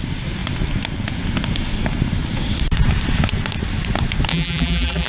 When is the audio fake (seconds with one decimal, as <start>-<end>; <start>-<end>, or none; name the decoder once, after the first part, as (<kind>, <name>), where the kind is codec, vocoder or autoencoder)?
4.3-5.1 (vocoder, BigVGAN v2)